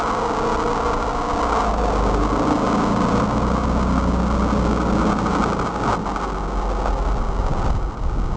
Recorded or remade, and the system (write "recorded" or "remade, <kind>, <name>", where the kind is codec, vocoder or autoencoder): recorded